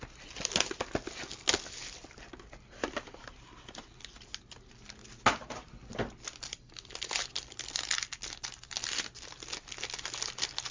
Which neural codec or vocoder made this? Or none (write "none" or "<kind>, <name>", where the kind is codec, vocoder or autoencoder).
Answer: none